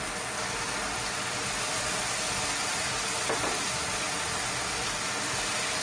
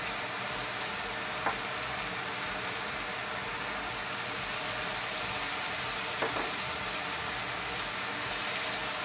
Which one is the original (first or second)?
second